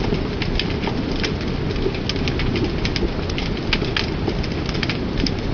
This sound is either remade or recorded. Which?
recorded